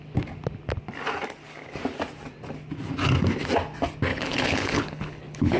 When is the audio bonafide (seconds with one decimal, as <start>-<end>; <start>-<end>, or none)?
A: 0.0-4.1